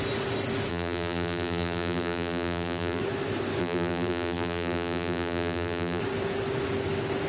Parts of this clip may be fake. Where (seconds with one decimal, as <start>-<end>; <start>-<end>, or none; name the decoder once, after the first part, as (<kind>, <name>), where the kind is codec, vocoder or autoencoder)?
0.7-3.0 (vocoder, BigVGAN v2); 3.6-6.0